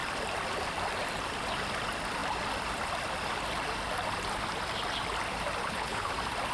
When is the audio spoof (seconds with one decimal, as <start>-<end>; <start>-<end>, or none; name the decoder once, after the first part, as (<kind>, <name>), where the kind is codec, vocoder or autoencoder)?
5.6-6.1 (codec, HILCodec)